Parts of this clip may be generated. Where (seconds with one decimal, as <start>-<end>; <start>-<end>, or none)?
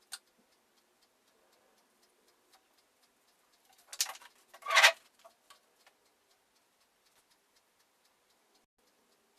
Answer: none